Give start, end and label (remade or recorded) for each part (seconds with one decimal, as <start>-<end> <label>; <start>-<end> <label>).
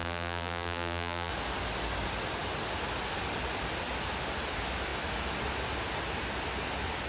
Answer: 0.0-1.3 remade; 1.3-7.1 recorded